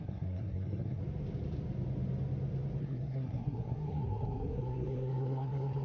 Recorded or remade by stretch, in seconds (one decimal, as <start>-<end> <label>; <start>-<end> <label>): 0.0-1.0 remade; 1.0-2.8 recorded; 2.8-5.8 remade